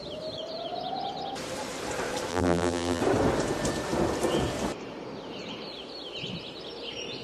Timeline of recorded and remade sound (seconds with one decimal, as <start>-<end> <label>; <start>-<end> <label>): 0.0-2.3 recorded; 2.3-3.0 remade; 3.0-7.2 recorded